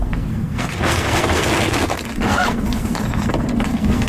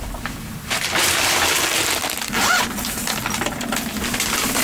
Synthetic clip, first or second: first